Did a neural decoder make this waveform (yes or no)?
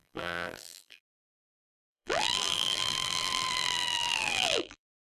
yes